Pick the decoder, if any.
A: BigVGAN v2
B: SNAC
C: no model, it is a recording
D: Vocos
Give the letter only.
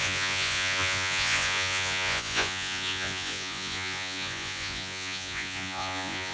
D